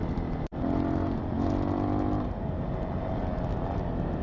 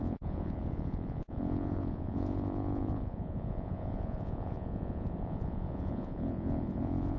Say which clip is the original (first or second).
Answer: first